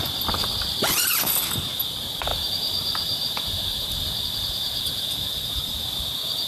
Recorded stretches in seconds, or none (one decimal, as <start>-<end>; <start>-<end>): 0.0-2.3